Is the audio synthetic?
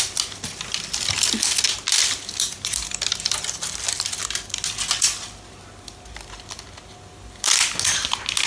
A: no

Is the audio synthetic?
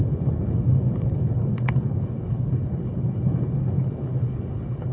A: yes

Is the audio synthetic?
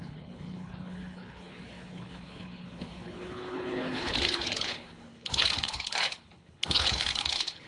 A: yes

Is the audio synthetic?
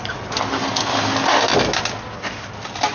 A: no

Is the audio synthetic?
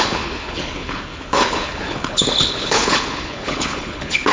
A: yes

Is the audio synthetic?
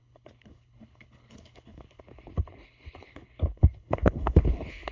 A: yes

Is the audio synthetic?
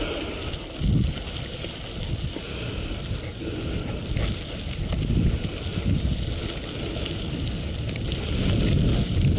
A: no